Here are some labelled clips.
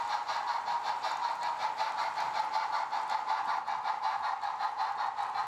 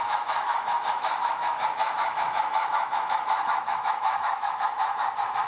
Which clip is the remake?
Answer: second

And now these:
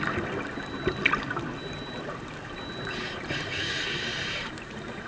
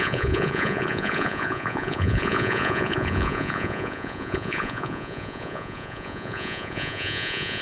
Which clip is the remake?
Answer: second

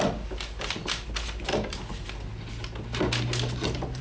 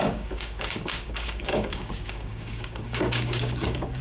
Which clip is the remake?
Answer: second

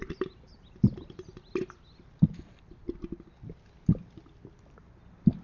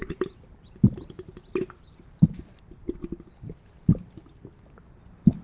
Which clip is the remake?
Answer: second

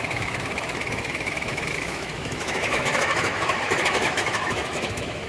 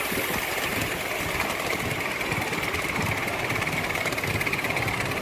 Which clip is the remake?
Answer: first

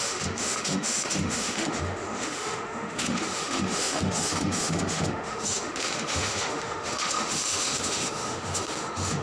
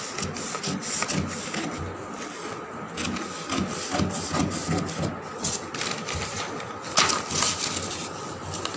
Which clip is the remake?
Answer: first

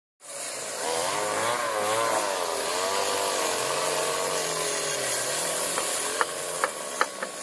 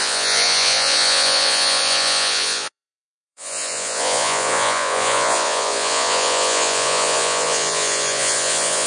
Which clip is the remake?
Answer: second